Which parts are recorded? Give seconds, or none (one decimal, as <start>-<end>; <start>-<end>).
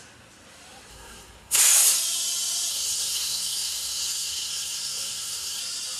0.0-0.9; 1.6-2.7; 5.6-6.0